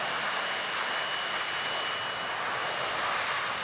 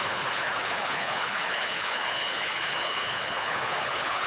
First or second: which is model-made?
second